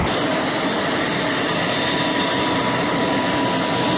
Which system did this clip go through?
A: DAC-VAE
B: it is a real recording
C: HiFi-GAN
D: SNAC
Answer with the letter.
B